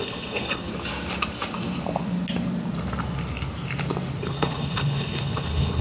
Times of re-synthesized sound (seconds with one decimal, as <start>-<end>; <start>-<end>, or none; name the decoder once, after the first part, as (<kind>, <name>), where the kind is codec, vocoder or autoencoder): 0.0-0.7 (codec, HILCodec); 4.2-5.8